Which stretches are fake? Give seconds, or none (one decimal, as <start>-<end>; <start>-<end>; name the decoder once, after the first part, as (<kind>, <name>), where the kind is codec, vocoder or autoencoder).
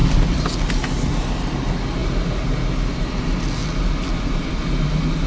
none